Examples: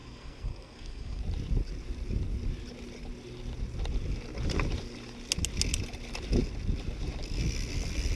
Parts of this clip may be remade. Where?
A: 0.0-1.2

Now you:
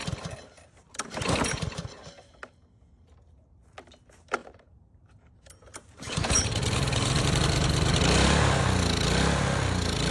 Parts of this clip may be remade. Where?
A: 4.4-8.6